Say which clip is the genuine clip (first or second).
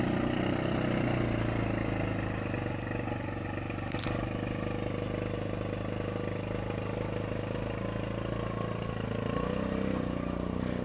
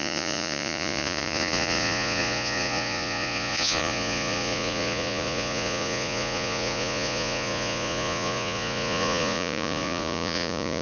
first